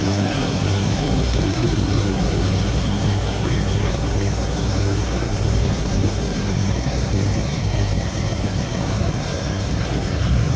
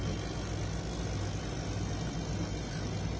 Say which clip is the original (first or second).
second